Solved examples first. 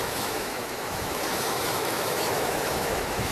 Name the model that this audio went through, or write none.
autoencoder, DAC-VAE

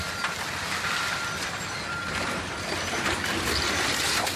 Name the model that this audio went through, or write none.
none